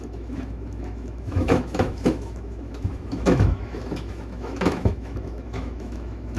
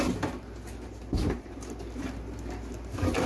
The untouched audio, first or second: second